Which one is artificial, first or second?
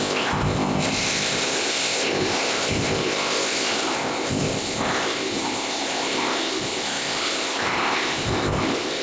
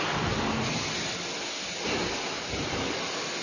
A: first